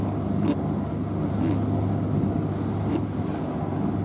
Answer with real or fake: real